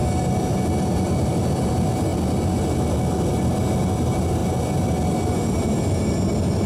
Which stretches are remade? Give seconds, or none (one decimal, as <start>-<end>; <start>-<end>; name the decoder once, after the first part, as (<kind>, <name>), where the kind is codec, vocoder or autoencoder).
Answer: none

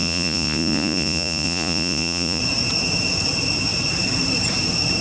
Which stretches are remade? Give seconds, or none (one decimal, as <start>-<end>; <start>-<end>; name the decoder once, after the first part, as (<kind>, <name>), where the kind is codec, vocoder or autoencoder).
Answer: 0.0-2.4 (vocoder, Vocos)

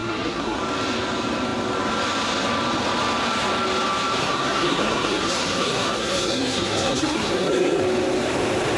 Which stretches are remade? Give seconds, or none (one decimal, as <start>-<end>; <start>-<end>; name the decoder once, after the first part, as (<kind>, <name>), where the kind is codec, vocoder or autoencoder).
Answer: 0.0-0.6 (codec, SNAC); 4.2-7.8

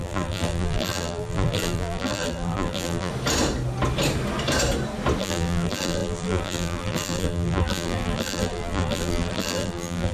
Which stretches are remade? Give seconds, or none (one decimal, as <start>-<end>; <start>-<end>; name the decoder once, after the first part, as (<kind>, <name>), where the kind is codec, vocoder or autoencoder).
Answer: 0.0-3.1 (vocoder, BigVGAN v2); 5.2-10.1

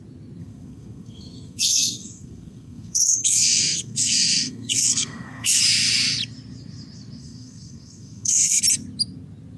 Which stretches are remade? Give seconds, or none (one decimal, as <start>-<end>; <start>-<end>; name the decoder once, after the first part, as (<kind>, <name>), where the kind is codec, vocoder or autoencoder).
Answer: 0.4-5.6 (codec, SNAC); 7.2-8.6

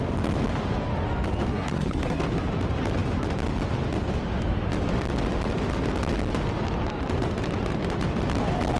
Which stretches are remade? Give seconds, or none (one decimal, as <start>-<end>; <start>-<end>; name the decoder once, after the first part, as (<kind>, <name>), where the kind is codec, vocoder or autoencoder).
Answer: 1.5-2.2 (codec, SNAC)

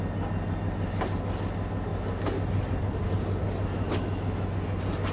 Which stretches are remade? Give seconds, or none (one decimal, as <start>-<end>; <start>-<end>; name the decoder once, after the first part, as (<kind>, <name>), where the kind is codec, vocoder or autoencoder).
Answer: 3.7-4.5 (autoencoder, DAC-VAE)